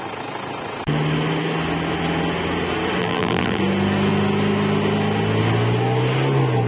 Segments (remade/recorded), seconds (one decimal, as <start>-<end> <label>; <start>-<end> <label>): 0.0-3.0 recorded; 3.0-3.6 remade; 3.6-6.7 recorded